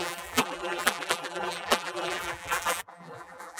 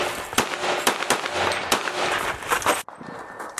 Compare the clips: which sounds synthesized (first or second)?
first